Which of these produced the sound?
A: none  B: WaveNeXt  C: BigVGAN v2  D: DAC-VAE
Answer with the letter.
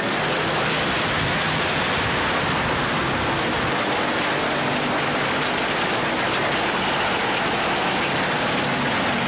A